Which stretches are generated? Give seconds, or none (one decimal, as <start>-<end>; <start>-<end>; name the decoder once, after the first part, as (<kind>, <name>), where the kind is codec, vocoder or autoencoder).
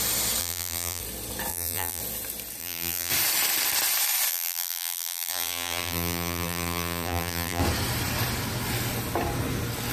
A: 0.4-1.0 (vocoder, BigVGAN v2); 1.5-2.0; 2.6-3.1; 4.3-7.6